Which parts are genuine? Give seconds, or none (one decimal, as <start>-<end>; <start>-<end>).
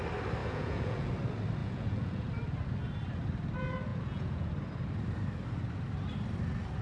0.0-0.4; 1.1-1.6; 2.3-3.9; 4.5-6.8